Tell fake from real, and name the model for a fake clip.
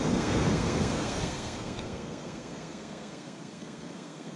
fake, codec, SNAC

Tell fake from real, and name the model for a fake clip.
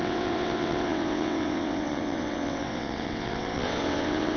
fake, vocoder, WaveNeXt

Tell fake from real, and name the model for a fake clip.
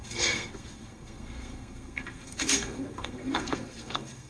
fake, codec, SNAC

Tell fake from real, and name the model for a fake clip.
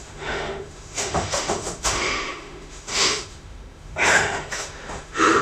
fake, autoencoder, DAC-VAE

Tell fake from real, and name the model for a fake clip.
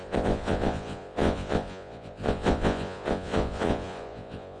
fake, vocoder, Vocos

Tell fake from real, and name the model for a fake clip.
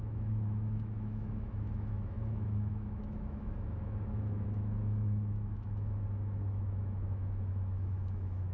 fake, autoencoder, DAC-VAE